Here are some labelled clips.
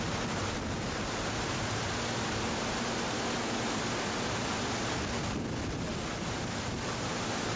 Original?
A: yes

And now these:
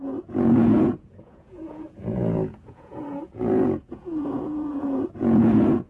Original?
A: no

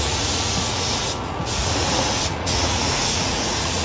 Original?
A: no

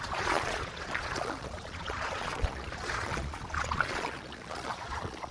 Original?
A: no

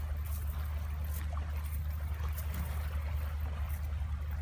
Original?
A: yes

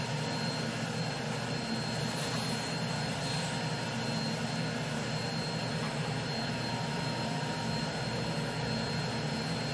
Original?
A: yes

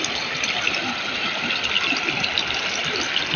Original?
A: yes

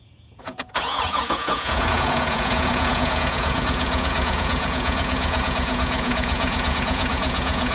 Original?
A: no